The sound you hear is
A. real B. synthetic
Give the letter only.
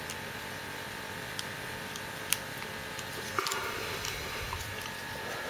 A